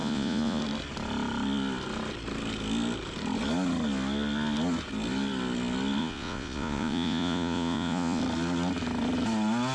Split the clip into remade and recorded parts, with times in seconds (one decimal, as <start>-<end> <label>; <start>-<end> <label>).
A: 0.0-0.6 remade; 0.6-6.0 recorded; 6.0-8.2 remade; 8.2-9.7 recorded